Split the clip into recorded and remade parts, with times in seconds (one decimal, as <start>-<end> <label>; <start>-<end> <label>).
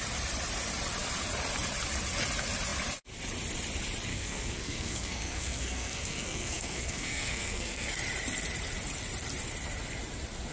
0.0-4.1 recorded; 4.1-7.9 remade; 7.9-10.5 recorded